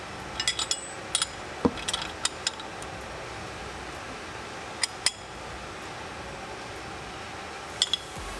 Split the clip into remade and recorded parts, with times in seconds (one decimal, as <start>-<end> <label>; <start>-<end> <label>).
0.0-8.4 recorded